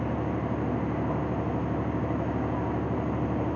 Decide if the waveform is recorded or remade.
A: recorded